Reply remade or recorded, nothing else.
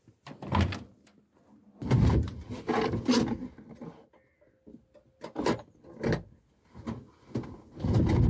recorded